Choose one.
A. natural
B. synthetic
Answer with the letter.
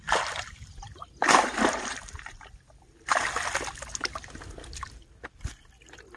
A